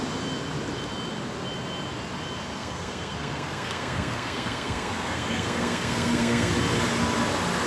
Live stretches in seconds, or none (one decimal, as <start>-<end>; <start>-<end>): 0.0-2.6; 6.5-7.7